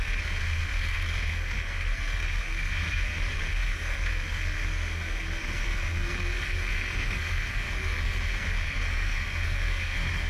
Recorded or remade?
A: remade